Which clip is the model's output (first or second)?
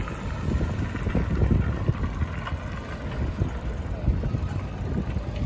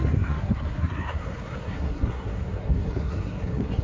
second